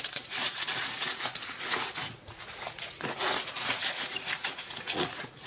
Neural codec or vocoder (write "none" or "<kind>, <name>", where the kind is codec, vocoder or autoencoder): vocoder, Vocos